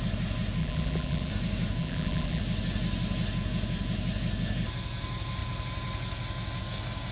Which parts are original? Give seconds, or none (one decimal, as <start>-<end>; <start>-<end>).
0.0-0.6; 1.3-1.8; 2.4-7.1